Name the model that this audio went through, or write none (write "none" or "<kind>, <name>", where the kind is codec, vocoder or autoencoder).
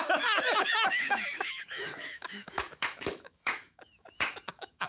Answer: autoencoder, DAC-VAE